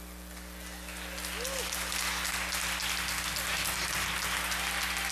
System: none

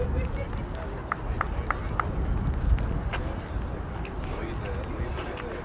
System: none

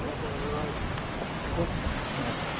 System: none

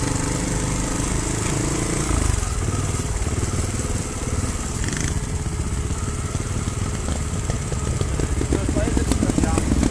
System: none